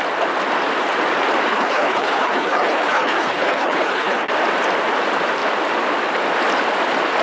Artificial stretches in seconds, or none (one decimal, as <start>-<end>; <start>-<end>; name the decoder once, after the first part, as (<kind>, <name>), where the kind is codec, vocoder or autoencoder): 1.5-4.3 (codec, HILCodec)